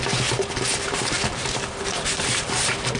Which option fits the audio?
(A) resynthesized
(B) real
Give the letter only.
B